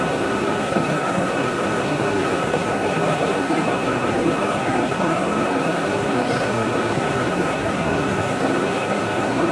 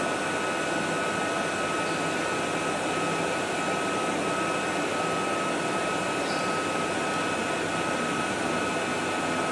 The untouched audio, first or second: second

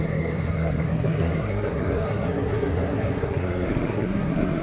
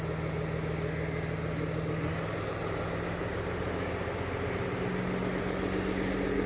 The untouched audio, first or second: second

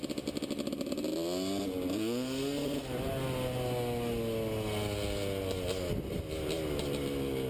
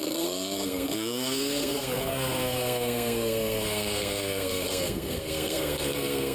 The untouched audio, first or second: first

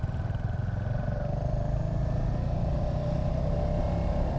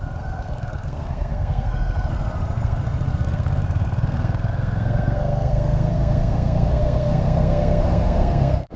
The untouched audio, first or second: first